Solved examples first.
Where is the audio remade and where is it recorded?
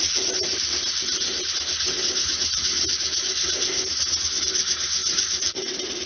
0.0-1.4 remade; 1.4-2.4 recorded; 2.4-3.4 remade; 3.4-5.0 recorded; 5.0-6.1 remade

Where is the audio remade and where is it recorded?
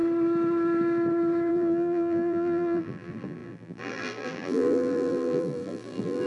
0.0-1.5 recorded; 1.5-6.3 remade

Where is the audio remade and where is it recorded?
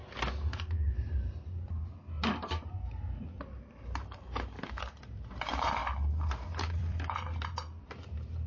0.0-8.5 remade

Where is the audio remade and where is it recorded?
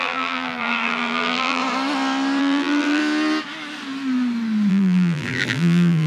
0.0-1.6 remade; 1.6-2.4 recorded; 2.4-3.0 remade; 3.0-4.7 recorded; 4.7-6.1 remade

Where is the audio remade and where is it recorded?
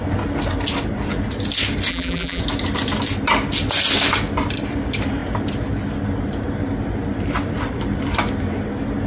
0.0-1.9 recorded; 1.9-2.4 remade; 2.4-9.1 recorded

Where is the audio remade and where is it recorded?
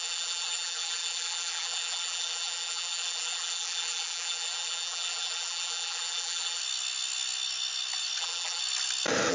0.0-6.6 remade; 6.6-8.2 recorded; 8.2-8.6 remade; 8.6-9.3 recorded